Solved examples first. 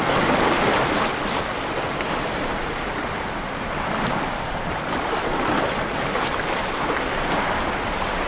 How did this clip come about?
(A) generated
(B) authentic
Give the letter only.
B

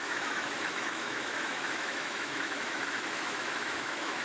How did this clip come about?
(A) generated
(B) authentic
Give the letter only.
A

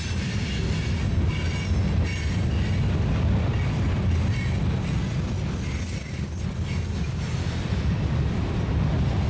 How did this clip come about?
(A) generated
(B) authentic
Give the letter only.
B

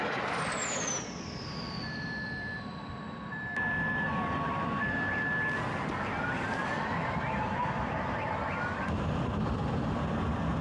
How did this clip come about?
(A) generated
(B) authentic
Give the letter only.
B